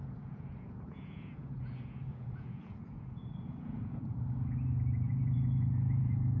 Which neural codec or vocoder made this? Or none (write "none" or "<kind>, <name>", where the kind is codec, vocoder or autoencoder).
vocoder, Vocos